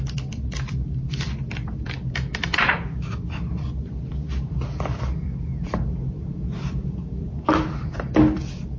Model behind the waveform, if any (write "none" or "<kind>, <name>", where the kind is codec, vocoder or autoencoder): vocoder, BigVGAN v2